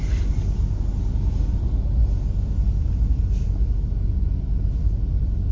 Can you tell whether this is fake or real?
real